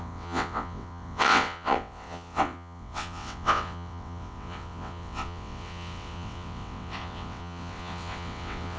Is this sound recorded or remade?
remade